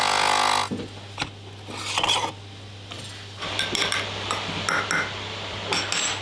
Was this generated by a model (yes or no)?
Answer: no